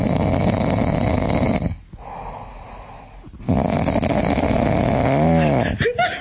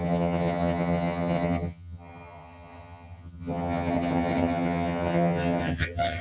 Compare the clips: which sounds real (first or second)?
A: first